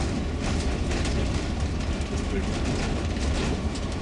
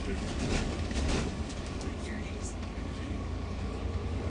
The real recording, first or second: first